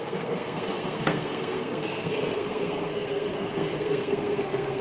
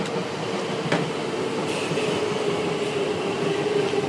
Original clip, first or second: second